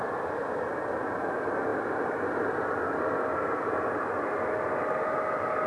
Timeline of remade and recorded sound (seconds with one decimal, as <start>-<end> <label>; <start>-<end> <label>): 0.0-5.7 recorded

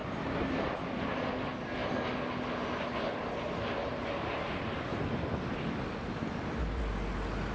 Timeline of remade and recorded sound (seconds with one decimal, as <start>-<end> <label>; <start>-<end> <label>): 0.0-7.5 recorded

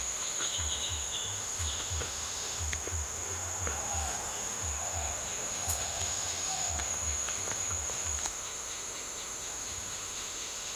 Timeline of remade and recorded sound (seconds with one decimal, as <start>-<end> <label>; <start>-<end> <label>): 0.0-10.8 remade

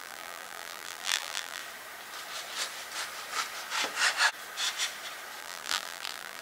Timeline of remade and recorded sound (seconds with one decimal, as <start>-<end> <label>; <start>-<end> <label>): 0.0-1.6 remade; 1.6-5.4 recorded; 5.4-6.4 remade